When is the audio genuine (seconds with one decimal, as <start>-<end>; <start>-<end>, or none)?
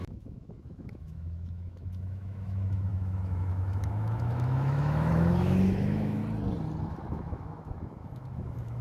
6.2-6.9